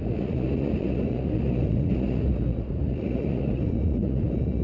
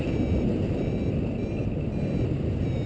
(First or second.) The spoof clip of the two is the first